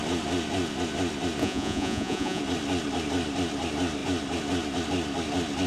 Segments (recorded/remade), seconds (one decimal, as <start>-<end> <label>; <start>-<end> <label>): 0.0-1.4 recorded; 1.4-2.4 remade; 2.4-5.7 recorded